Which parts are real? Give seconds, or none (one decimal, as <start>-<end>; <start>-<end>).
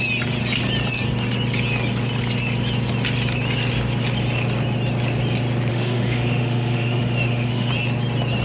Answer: 0.0-5.7; 7.7-8.4